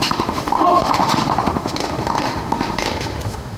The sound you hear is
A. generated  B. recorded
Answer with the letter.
A